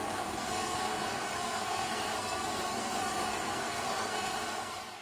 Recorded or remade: remade